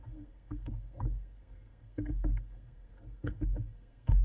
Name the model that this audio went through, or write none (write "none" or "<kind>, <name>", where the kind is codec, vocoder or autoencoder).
codec, SNAC